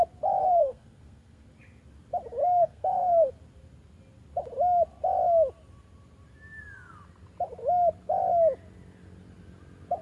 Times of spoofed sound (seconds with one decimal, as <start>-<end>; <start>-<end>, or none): 0.4-1.5; 2.4-3.3